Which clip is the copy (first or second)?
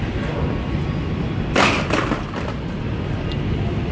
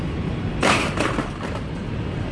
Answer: second